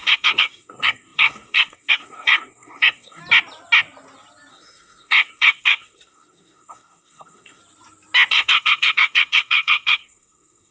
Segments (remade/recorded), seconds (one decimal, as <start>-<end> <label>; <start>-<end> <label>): 0.0-3.2 remade; 3.2-4.5 recorded; 4.5-7.6 remade; 7.6-8.3 recorded; 8.3-10.7 remade